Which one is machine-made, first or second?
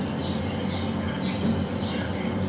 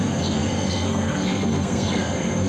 second